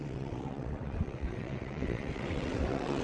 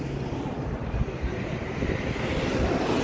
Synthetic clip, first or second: first